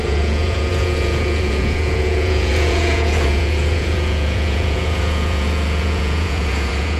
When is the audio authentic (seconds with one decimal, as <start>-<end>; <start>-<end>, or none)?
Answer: none